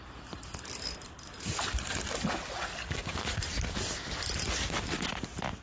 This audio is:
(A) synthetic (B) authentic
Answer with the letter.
A